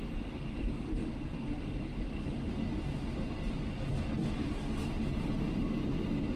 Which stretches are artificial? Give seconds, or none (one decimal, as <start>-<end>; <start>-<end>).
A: none